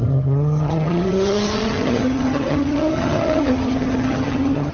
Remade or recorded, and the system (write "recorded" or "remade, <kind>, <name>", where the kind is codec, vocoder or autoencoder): remade, vocoder, HiFi-GAN